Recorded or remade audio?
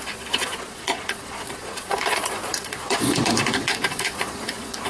remade